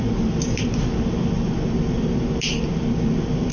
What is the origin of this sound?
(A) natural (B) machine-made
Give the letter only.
A